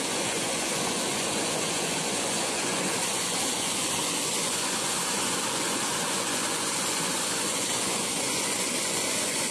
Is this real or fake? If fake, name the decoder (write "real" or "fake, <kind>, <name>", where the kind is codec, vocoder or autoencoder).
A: fake, vocoder, Vocos